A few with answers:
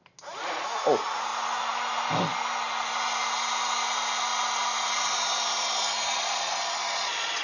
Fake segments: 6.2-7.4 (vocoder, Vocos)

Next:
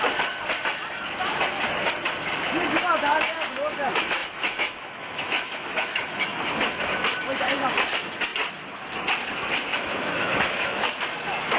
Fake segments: 4.2-6.4 (autoencoder, DAC-VAE); 9.7-10.9